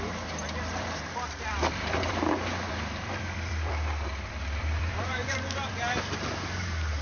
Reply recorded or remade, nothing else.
remade